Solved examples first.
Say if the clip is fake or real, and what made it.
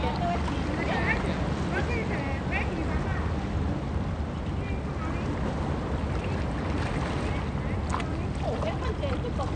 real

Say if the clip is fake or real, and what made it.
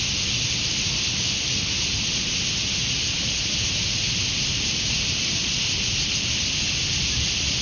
real